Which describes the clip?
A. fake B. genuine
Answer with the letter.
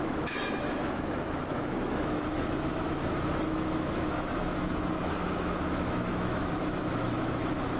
A